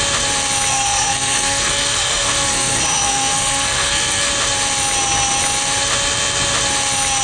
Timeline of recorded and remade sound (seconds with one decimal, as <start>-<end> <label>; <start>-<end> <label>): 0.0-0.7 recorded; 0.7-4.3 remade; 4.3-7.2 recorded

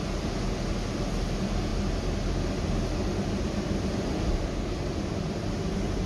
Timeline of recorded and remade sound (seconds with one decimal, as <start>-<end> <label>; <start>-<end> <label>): 0.0-6.1 recorded

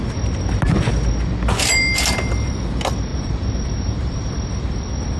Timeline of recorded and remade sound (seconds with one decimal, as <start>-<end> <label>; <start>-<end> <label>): 0.0-3.1 recorded; 3.1-4.3 remade; 4.3-5.2 recorded

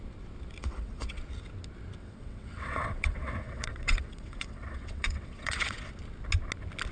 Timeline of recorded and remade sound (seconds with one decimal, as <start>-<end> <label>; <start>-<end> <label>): 0.0-0.6 recorded; 0.6-1.2 remade; 1.2-2.0 recorded; 2.0-5.9 remade; 5.9-6.9 recorded